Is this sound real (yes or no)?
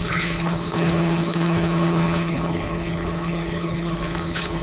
no